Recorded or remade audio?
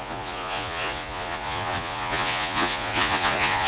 remade